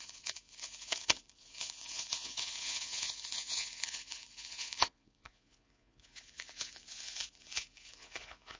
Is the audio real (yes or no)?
no